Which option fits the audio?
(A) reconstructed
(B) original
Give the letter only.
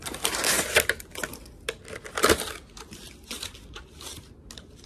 B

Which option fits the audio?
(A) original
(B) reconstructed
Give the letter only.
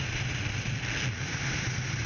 A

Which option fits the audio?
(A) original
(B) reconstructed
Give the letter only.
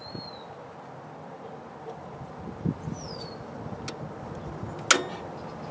A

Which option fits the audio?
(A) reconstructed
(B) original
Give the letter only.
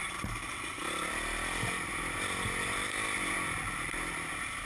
B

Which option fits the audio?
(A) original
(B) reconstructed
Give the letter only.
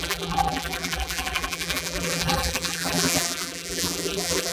B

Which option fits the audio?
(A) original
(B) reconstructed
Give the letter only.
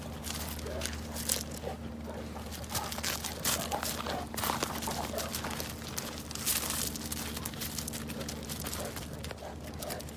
A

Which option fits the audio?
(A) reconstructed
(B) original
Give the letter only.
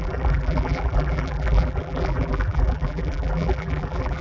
A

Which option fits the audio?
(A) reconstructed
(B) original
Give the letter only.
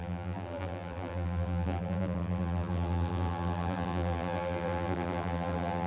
A